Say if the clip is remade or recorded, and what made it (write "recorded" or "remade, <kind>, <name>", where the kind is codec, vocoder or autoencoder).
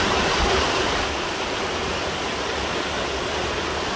recorded